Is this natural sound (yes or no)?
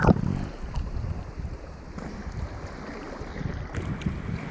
yes